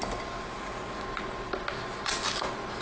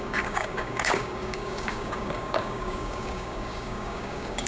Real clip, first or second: first